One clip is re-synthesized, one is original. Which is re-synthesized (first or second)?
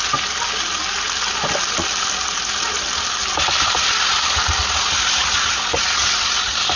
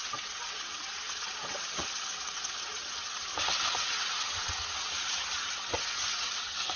second